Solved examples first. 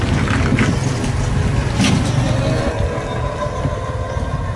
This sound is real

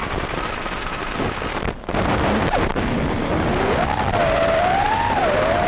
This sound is fake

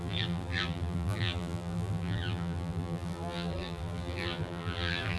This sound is fake